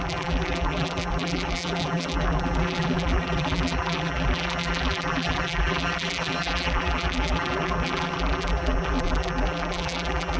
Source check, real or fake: fake